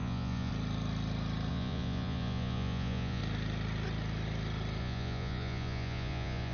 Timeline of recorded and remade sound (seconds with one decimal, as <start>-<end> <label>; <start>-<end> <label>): 0.0-0.5 remade; 0.5-1.5 recorded; 1.5-3.2 remade; 3.2-4.8 recorded; 4.8-6.5 remade